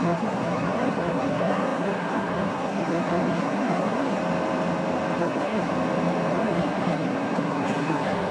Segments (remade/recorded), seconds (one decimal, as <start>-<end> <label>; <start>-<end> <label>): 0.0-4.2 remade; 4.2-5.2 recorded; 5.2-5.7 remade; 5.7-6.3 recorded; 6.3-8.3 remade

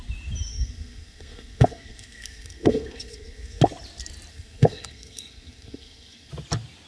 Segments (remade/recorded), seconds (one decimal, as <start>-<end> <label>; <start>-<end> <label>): 0.0-0.5 recorded; 0.5-3.6 remade; 3.6-4.3 recorded; 4.3-6.3 remade; 6.3-6.9 recorded

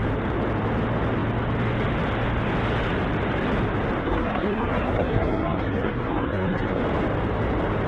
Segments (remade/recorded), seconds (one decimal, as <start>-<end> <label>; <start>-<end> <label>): 0.0-4.0 recorded; 4.0-6.8 remade; 6.8-7.9 recorded